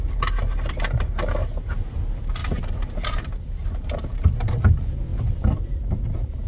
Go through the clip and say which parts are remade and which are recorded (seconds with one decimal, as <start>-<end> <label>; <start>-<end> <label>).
0.0-1.4 recorded; 1.4-1.9 remade; 1.9-2.4 recorded; 2.4-4.6 remade; 4.6-6.5 recorded